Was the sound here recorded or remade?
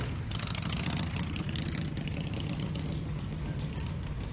recorded